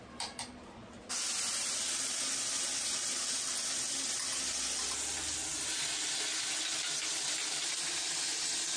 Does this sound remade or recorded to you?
recorded